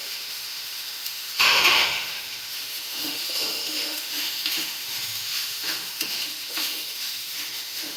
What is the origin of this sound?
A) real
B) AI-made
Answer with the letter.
B